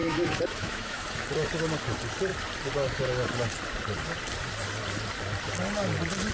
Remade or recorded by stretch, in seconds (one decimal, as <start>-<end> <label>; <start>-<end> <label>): 0.0-1.3 remade; 1.3-6.3 recorded